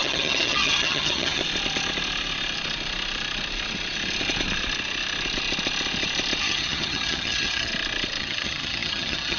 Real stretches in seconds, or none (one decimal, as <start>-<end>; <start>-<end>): 1.4-6.4; 7.7-8.2